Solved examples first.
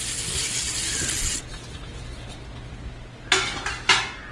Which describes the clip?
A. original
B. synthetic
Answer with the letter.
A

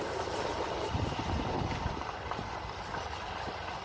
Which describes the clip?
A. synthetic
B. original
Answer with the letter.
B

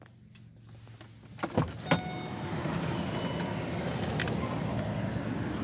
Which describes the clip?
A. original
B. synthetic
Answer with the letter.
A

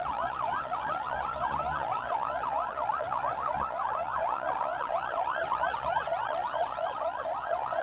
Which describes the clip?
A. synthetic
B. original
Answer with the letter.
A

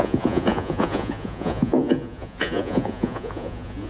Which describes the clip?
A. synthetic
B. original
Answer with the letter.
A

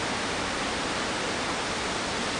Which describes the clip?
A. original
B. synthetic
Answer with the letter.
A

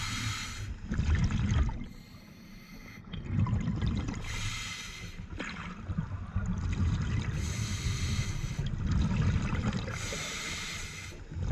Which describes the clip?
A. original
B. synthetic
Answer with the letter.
A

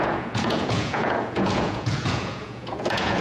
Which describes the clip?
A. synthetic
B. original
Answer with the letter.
A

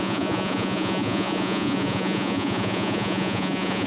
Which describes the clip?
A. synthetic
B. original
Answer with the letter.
A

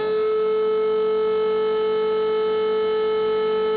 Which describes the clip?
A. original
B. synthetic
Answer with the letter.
A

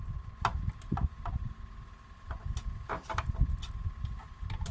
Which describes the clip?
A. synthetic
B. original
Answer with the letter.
B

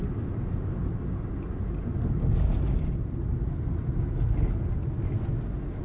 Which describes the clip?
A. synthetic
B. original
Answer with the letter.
B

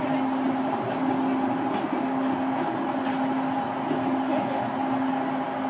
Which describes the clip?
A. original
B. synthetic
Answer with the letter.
A